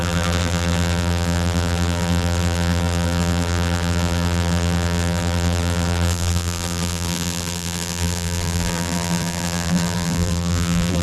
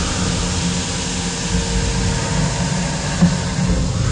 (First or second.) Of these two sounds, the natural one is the second